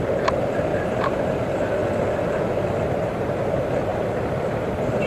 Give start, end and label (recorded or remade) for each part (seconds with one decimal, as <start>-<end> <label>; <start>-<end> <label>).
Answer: 0.0-1.8 remade; 1.8-2.7 recorded; 2.7-5.1 remade